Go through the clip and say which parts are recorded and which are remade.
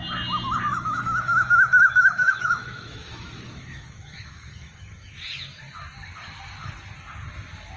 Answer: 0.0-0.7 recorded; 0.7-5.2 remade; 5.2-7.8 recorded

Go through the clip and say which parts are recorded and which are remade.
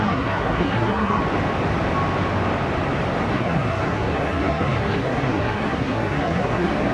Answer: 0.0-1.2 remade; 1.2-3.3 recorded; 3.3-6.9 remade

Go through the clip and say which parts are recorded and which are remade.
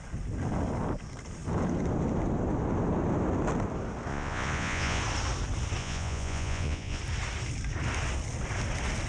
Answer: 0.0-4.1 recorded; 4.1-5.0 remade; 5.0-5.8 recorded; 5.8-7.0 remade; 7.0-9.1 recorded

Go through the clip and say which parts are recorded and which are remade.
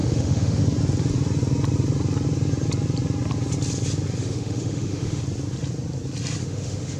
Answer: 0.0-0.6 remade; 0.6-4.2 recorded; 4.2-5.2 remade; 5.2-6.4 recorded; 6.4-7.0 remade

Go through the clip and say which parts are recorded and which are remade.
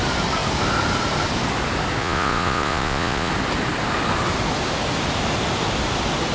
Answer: 0.0-2.0 recorded; 2.0-3.3 remade; 3.3-6.3 recorded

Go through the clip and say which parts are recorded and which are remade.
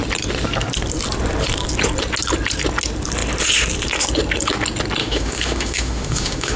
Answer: 0.0-5.0 recorded; 5.0-6.6 remade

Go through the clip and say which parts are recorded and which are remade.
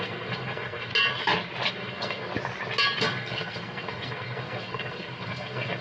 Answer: 0.0-0.9 remade; 0.9-1.7 recorded; 1.7-2.3 remade; 2.3-3.0 recorded; 3.0-5.8 remade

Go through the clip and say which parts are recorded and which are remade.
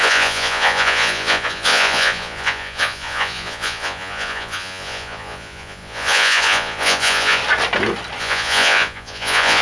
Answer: 0.0-7.4 remade; 7.4-8.2 recorded; 8.2-9.6 remade